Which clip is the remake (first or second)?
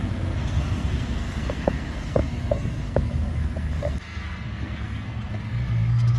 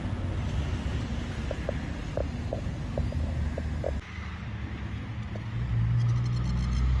first